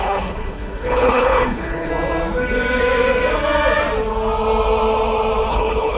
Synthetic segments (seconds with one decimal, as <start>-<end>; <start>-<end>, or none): 0.0-1.9; 5.5-6.0